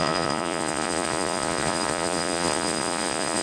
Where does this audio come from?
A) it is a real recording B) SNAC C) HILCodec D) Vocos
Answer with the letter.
D